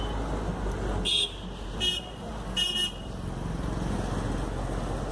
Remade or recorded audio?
recorded